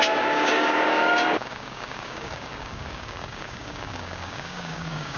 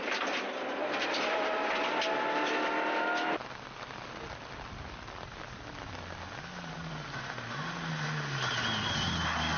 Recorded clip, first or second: second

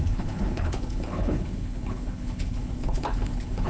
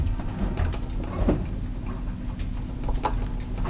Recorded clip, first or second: second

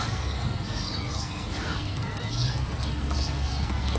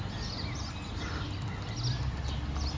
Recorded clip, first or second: second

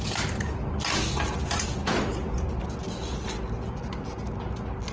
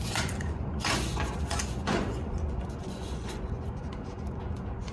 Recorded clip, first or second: first